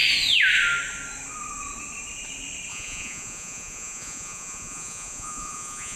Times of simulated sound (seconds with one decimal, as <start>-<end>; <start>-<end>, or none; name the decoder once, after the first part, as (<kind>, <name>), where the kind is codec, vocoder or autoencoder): 2.7-6.0 (vocoder, Vocos)